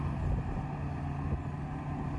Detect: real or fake real